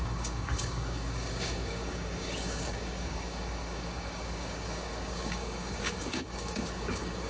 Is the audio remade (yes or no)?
yes